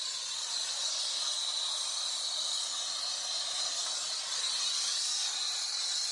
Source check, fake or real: real